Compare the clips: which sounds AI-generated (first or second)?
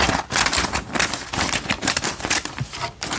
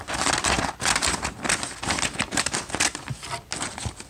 first